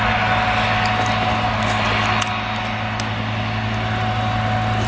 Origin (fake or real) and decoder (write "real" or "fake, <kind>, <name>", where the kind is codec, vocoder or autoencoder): real